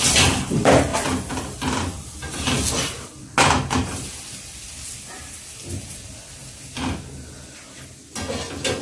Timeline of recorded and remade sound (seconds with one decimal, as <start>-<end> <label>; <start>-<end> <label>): 0.0-8.8 recorded